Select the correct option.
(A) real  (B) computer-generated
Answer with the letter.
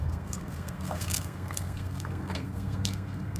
B